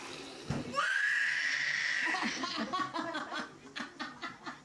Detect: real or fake real